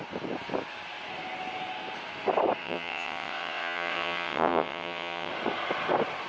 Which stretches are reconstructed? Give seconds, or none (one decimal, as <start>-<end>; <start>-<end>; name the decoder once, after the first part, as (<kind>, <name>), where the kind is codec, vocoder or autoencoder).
2.6-5.3 (vocoder, WaveNeXt)